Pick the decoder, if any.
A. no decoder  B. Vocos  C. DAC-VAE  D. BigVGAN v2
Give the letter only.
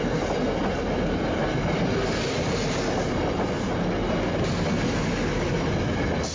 A